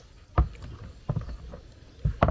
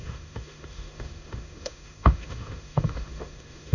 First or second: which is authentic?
first